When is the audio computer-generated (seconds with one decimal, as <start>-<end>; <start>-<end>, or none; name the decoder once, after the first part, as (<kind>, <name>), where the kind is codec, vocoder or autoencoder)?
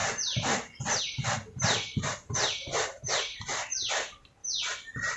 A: 1.0-4.4 (vocoder, BigVGAN v2)